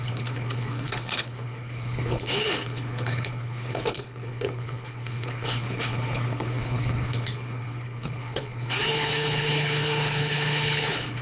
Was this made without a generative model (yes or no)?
no